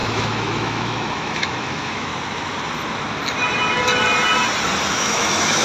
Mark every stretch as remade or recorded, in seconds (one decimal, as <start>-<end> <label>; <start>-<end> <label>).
0.0-2.1 remade; 2.1-4.9 recorded; 4.9-5.6 remade